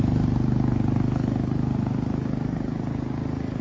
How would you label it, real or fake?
real